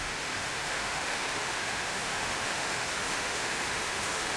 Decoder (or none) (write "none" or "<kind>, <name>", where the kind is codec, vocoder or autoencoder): autoencoder, DAC-VAE